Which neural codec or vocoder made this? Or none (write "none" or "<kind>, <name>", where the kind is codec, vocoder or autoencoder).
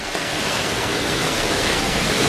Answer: codec, SNAC